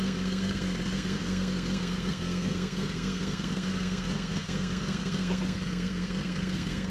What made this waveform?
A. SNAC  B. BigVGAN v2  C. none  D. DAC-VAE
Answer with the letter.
A